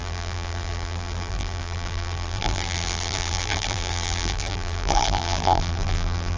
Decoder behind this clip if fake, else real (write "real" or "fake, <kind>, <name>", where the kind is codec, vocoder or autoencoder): fake, vocoder, BigVGAN v2